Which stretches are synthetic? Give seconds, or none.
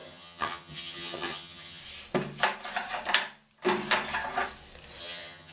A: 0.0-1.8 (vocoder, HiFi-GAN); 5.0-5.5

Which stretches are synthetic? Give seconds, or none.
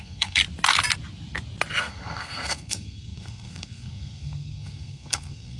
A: 0.0-0.4 (codec, SNAC); 1.8-5.6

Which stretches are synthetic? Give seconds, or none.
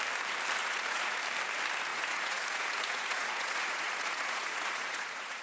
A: 0.6-1.2 (vocoder, Vocos); 1.9-5.4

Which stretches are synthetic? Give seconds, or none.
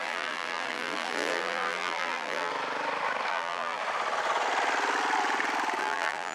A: 0.0-2.5 (vocoder, BigVGAN v2); 3.3-3.8; 5.8-6.3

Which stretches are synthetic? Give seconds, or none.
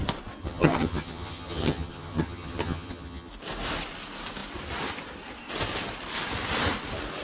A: 0.4-3.3 (vocoder, HiFi-GAN)